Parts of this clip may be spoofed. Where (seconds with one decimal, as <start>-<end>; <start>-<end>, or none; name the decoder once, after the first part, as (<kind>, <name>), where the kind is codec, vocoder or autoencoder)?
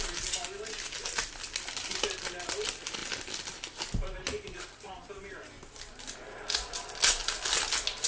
none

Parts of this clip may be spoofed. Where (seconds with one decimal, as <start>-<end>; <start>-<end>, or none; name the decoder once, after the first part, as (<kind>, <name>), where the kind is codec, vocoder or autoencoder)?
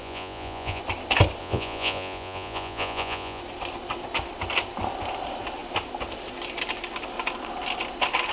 0.0-0.8 (vocoder, Vocos); 1.4-3.4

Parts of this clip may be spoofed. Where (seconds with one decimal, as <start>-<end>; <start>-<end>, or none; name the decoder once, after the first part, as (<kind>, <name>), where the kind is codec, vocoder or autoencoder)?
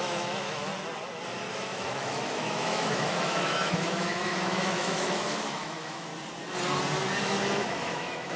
0.0-0.7 (autoencoder, DAC-VAE); 1.5-6.1; 7.2-8.4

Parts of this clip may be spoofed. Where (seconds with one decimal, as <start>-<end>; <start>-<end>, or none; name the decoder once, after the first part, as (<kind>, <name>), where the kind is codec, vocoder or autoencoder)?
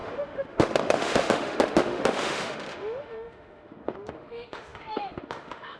0.0-5.8 (autoencoder, DAC-VAE)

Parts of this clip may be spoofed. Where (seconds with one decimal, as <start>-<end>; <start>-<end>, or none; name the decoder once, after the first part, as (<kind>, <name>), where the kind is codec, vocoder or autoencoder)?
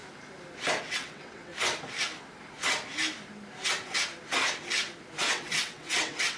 0.8-1.5 (vocoder, WaveNeXt); 5.3-6.4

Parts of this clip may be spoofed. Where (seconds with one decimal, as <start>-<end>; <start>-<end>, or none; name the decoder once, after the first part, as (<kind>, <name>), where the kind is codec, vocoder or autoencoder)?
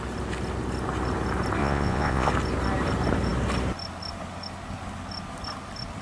1.6-2.3 (vocoder, Vocos)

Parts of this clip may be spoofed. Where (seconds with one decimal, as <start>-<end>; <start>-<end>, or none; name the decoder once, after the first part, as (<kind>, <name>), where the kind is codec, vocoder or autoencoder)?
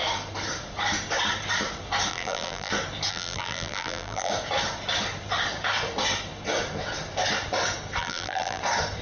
2.1-2.7 (vocoder, BigVGAN v2); 3.1-4.3; 8.0-8.6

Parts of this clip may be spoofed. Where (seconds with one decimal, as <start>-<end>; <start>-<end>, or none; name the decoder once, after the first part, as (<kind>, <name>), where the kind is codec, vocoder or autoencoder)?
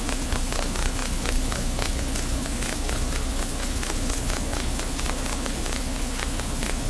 0.0-6.9 (codec, HILCodec)